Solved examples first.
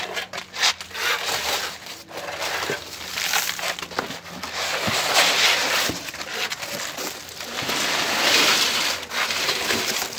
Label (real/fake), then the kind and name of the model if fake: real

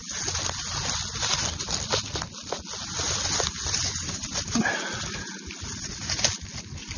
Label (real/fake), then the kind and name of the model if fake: real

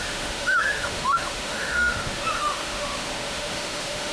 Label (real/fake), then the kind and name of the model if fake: fake, autoencoder, DAC-VAE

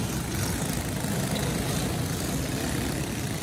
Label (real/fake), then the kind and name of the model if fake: real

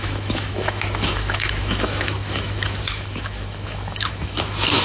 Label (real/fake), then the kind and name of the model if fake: fake, autoencoder, DAC-VAE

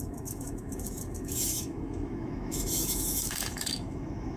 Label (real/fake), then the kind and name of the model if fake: fake, autoencoder, DAC-VAE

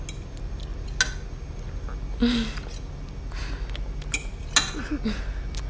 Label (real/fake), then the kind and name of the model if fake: real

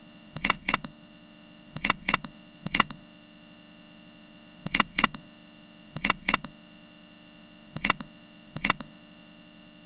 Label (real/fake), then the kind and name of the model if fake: fake, autoencoder, DAC-VAE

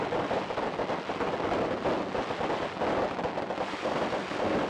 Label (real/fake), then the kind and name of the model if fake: real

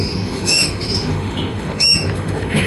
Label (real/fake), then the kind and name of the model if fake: fake, autoencoder, DAC-VAE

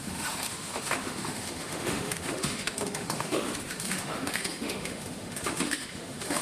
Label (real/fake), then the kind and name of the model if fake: fake, autoencoder, DAC-VAE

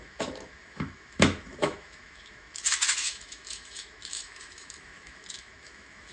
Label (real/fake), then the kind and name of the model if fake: fake, autoencoder, DAC-VAE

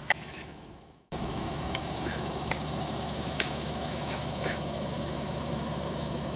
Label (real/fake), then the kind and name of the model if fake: fake, autoencoder, DAC-VAE